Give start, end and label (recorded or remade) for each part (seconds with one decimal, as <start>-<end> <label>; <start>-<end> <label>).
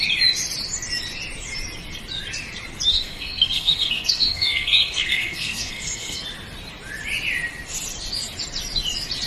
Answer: 0.0-2.9 recorded; 2.9-6.2 remade; 6.2-9.3 recorded